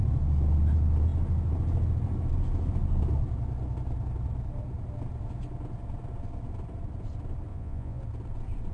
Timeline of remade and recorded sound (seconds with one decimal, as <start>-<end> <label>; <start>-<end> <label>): 0.0-7.5 recorded; 7.5-8.0 remade; 8.0-8.7 recorded